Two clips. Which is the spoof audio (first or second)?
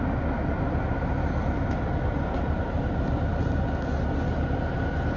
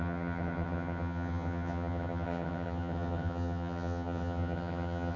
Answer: second